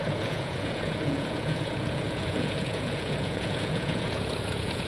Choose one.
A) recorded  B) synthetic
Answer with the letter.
B